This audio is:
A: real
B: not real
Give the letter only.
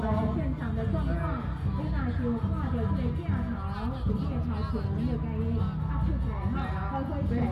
A